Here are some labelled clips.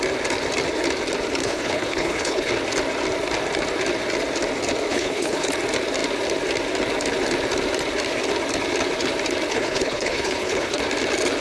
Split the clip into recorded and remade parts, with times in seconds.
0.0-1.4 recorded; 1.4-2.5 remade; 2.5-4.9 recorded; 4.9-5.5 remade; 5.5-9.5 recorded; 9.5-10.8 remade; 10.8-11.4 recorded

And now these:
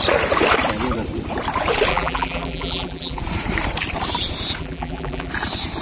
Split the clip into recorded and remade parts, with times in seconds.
0.0-1.9 recorded; 1.9-3.2 remade; 3.2-4.6 recorded; 4.6-5.3 remade; 5.3-5.8 recorded

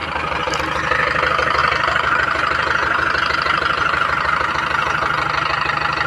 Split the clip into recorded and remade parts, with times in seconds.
0.0-0.5 remade; 0.5-1.6 recorded; 1.6-4.5 remade; 4.5-6.1 recorded

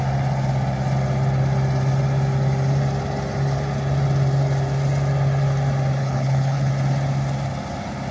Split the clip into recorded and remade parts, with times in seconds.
0.0-6.0 recorded; 6.0-6.7 remade; 6.7-8.1 recorded

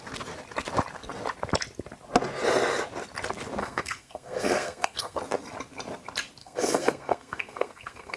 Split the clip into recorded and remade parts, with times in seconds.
0.0-3.6 recorded; 3.6-5.2 remade; 5.2-6.4 recorded; 6.4-8.2 remade

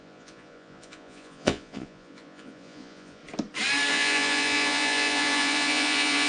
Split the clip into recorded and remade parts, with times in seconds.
0.0-3.2 remade; 3.2-3.9 recorded; 3.9-6.3 remade